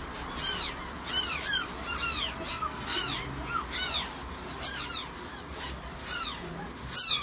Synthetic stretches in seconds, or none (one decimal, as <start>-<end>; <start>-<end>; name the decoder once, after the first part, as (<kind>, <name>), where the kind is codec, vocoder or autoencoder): 2.5-3.0 (codec, SNAC)